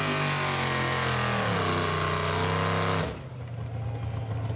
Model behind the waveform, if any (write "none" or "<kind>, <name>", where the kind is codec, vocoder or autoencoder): none